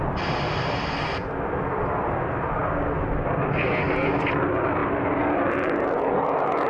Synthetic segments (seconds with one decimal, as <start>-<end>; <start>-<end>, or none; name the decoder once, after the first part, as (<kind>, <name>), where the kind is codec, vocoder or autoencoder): none